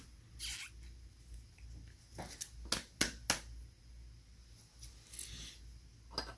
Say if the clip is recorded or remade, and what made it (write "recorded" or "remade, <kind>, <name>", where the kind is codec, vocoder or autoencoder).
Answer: recorded